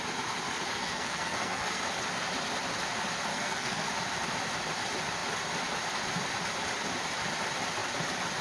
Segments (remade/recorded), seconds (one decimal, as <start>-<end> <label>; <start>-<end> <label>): 0.0-0.7 recorded; 0.7-1.8 remade; 1.8-3.3 recorded; 3.3-3.9 remade; 3.9-8.4 recorded